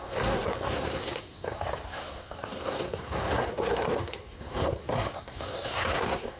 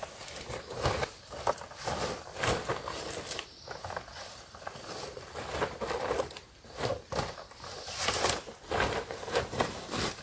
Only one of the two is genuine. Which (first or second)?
second